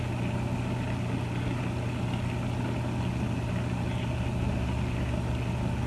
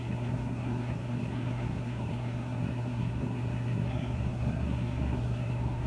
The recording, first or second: first